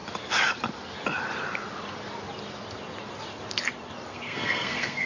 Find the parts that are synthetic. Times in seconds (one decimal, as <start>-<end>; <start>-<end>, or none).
4.1-5.1